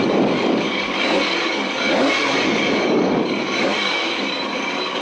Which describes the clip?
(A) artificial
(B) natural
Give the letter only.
A